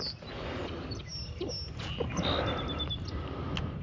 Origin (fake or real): real